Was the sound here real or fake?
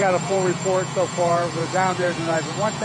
fake